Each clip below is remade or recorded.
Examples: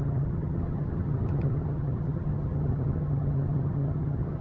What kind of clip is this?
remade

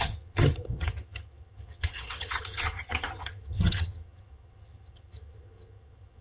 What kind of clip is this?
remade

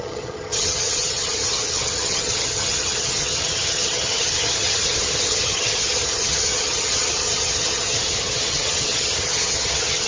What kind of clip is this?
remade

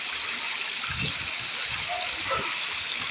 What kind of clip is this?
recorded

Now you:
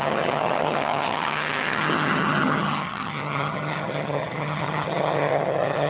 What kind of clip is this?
remade